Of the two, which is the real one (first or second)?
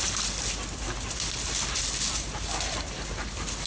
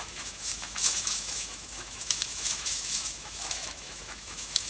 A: first